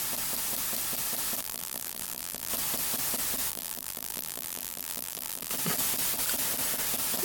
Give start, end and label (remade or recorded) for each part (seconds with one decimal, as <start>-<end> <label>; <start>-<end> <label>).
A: 0.0-1.4 recorded; 1.4-2.5 remade; 2.5-3.5 recorded; 3.5-5.5 remade; 5.5-7.2 recorded